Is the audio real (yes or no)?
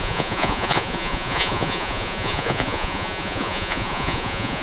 no